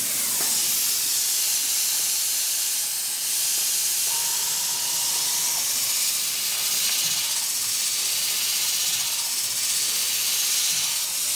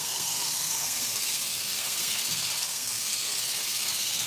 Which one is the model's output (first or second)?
second